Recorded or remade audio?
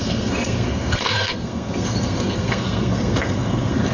remade